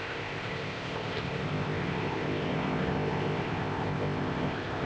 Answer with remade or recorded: remade